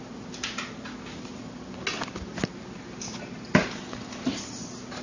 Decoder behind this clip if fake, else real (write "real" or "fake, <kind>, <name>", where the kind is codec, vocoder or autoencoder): real